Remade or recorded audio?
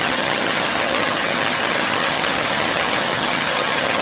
remade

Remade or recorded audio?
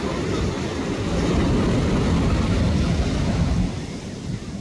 recorded